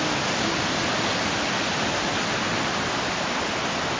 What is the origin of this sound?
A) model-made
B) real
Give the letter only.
B